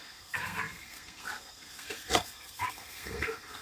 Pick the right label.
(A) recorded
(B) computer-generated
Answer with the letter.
B